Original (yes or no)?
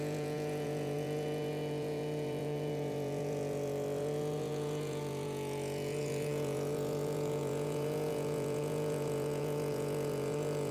no